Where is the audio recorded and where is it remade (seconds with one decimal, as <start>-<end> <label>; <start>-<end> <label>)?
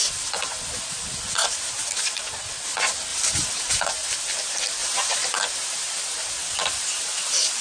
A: 0.0-1.4 recorded; 1.4-1.9 remade; 1.9-3.1 recorded; 3.1-3.8 remade; 3.8-4.8 recorded; 4.8-5.4 remade; 5.4-7.6 recorded